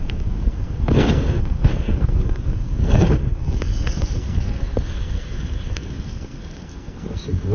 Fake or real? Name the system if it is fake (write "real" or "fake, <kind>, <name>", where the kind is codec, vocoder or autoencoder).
fake, codec, SNAC